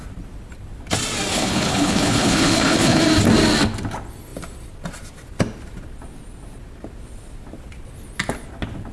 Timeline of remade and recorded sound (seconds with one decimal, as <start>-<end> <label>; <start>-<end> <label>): 0.0-1.3 recorded; 1.3-3.0 remade; 3.0-8.9 recorded